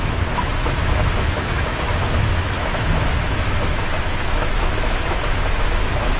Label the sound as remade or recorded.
remade